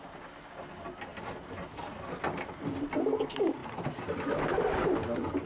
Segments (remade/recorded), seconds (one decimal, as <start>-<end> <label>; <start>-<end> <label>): 0.0-5.5 recorded